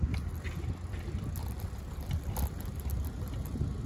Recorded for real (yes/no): yes